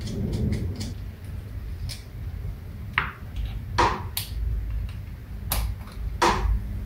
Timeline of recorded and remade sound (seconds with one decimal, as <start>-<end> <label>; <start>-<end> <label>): 0.0-6.9 recorded